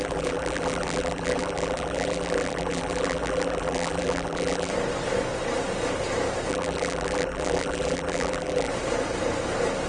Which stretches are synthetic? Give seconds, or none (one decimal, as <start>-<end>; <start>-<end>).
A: 0.0-4.7; 6.5-8.7